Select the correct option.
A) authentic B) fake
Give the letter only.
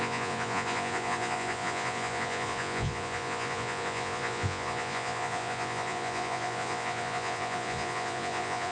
B